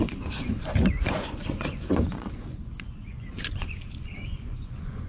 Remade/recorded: remade